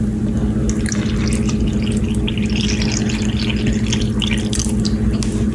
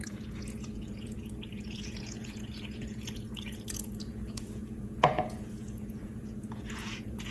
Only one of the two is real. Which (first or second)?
first